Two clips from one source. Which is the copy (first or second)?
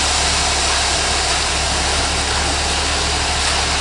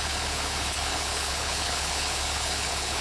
second